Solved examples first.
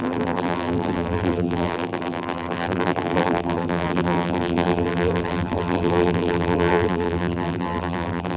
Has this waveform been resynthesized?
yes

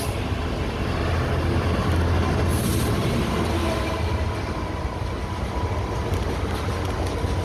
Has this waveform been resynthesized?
no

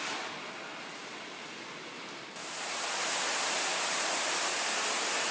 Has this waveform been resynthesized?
no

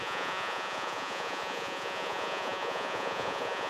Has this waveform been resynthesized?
yes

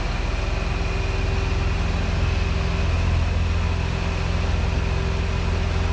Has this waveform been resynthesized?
no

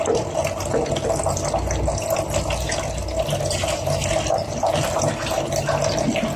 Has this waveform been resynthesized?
no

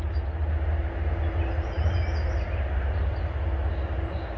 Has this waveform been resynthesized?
no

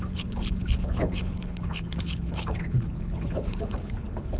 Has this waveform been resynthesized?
yes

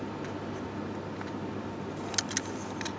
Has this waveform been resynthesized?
no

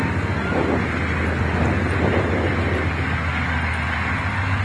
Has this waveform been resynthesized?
no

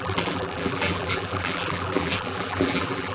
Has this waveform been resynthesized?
yes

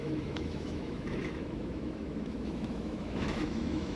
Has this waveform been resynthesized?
yes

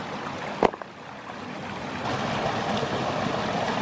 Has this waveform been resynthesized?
no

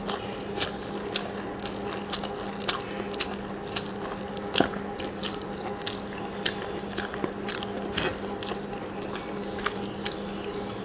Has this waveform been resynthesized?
no